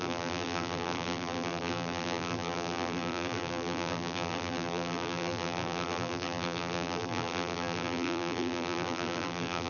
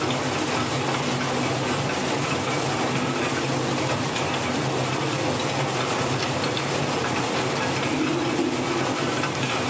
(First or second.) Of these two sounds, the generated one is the first